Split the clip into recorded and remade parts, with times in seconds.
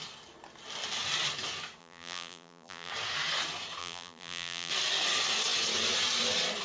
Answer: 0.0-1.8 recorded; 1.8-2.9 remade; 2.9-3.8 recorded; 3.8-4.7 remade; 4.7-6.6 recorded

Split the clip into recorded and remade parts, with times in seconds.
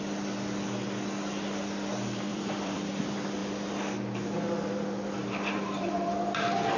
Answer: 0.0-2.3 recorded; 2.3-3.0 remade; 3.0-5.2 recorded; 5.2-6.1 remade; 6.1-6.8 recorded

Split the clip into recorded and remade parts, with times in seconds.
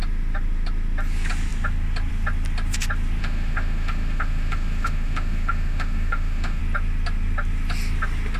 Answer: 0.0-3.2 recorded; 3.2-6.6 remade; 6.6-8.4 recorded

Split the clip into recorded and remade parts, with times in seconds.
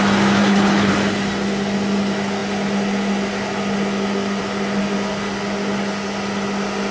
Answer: 0.0-0.4 recorded; 0.4-0.9 remade; 0.9-6.9 recorded